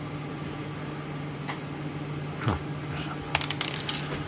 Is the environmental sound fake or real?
real